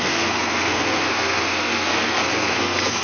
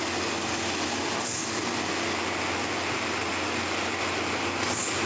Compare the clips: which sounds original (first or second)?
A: second